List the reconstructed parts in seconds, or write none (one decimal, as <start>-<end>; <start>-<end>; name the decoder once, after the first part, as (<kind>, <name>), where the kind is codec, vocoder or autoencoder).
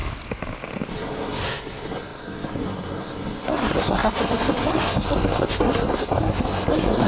0.9-7.1 (codec, SNAC)